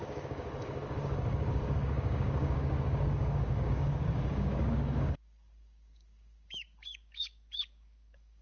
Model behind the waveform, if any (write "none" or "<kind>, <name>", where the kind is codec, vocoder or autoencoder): codec, DAC